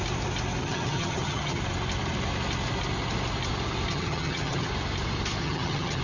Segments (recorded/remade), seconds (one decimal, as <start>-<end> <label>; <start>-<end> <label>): 0.0-0.6 recorded; 0.6-1.6 remade; 1.6-3.9 recorded; 3.9-4.7 remade; 4.7-5.4 recorded; 5.4-6.0 remade